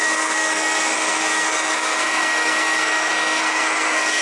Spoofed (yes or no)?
yes